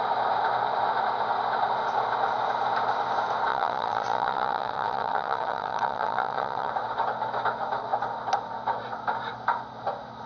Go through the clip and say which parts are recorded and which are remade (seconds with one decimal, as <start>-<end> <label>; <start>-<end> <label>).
0.0-3.5 recorded; 3.5-6.7 remade; 6.7-10.3 recorded